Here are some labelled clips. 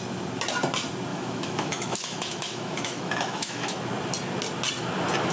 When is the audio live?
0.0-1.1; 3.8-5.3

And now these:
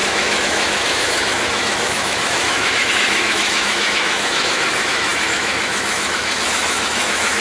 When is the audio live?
none

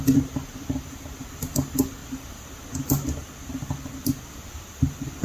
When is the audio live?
0.0-5.2

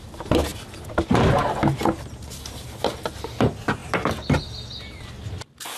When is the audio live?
0.0-5.8

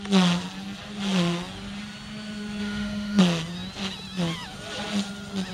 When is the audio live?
0.0-2.6; 3.2-5.5

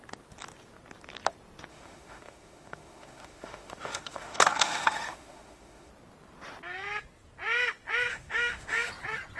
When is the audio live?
0.0-1.7; 5.9-8.1; 8.9-9.4

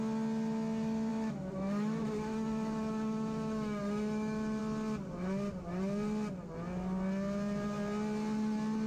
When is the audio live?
0.0-1.1; 4.6-8.9

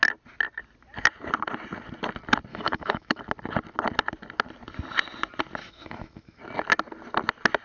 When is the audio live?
0.0-2.5; 3.2-5.6; 6.4-7.6